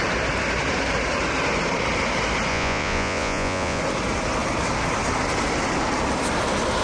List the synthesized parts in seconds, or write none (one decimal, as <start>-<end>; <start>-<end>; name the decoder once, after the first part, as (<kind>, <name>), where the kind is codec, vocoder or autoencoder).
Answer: 2.5-3.8 (vocoder, Vocos)